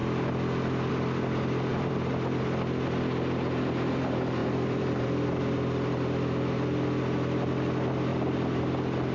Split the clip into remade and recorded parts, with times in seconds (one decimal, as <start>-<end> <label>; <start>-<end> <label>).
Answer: 0.0-1.7 recorded; 1.7-2.4 remade; 2.4-4.4 recorded; 4.4-5.4 remade; 5.4-8.1 recorded; 8.1-8.6 remade; 8.6-9.1 recorded